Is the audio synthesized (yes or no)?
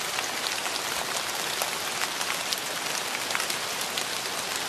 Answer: no